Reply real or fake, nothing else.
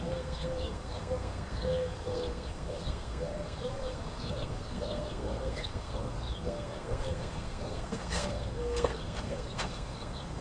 fake